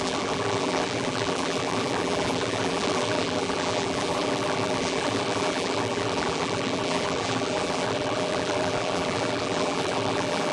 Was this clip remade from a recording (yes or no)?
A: yes